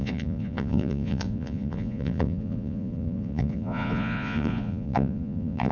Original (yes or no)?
no